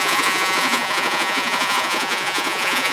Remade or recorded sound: remade